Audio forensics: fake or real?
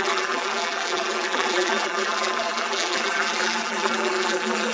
fake